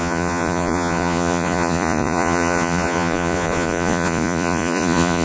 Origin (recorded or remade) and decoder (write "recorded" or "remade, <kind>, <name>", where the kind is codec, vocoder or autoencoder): remade, vocoder, Vocos